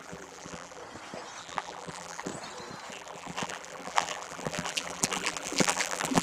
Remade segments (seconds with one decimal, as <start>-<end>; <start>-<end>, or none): 0.0-0.8; 1.4-2.3; 2.9-6.2